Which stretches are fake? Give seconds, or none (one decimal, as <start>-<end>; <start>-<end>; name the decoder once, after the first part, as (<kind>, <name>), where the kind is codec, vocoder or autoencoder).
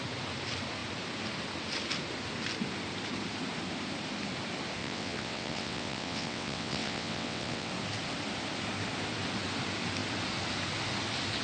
4.8-7.7 (vocoder, WaveNeXt)